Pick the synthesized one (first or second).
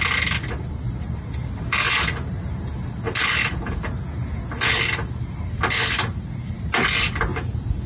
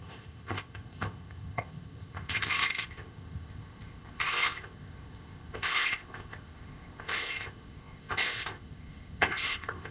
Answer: second